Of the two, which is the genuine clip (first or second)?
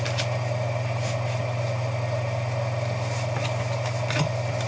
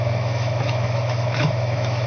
first